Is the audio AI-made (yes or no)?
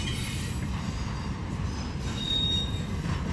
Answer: no